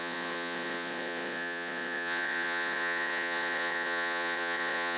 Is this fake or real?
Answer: fake